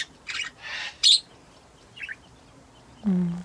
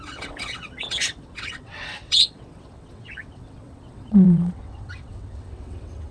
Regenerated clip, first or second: second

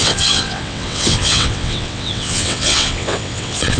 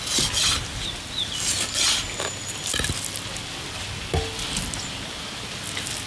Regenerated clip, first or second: first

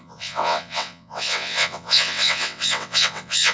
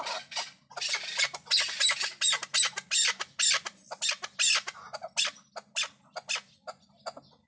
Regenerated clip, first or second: first